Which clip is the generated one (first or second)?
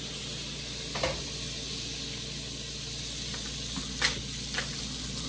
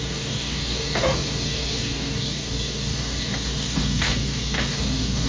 second